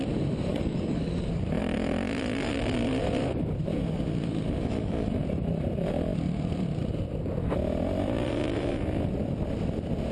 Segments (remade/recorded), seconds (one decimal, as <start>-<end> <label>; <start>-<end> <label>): 0.0-0.5 recorded; 0.5-1.2 remade; 1.2-10.1 recorded